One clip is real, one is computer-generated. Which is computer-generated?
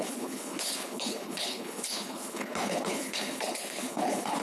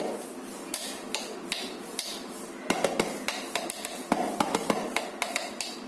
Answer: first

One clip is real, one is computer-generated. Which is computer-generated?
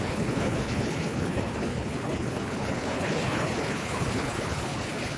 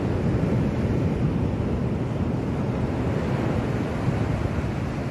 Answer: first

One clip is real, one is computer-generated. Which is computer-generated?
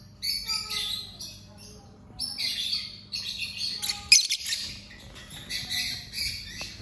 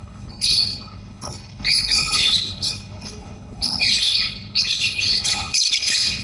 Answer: second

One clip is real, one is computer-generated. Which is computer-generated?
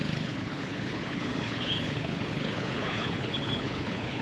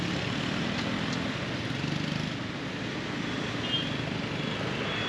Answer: first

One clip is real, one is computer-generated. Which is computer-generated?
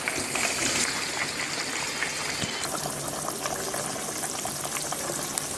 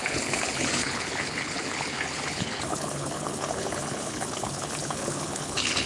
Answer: second